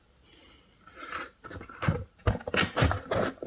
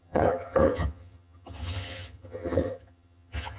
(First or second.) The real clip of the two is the first